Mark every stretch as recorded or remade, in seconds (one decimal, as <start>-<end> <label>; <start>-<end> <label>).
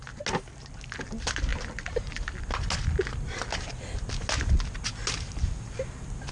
0.0-6.3 recorded